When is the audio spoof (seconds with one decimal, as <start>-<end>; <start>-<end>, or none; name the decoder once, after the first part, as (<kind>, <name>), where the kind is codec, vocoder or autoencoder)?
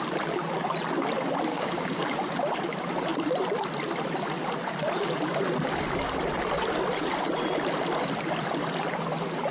1.5-2.0 (codec, DAC)